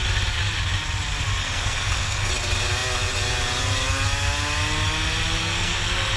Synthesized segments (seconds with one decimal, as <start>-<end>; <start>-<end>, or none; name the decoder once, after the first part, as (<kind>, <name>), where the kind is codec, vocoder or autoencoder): 1.4-2.3 (codec, SNAC); 5.4-6.2